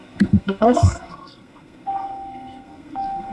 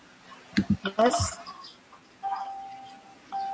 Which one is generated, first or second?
first